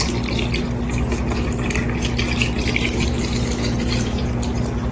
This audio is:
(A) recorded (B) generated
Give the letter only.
A